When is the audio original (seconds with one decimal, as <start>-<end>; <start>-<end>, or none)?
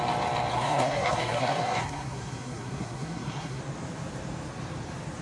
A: 0.0-0.5; 3.6-5.2